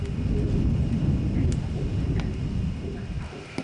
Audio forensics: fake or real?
real